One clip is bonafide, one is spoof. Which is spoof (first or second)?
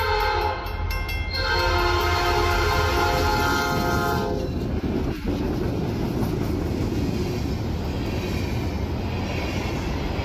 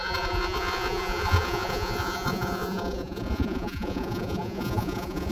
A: second